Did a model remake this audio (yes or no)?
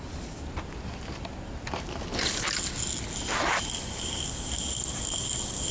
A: no